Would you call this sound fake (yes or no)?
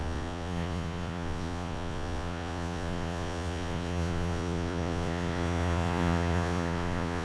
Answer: yes